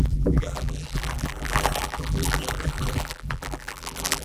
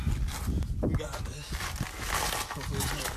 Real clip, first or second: second